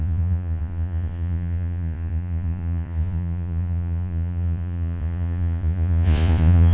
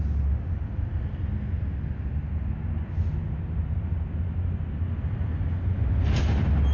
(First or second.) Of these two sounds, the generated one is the first